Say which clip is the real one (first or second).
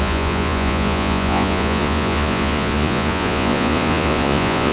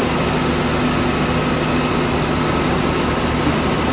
second